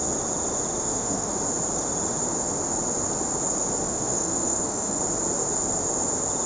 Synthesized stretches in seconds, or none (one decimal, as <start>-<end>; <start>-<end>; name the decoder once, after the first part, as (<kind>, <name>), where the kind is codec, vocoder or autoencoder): 0.8-1.4 (autoencoder, DAC-VAE); 3.9-5.0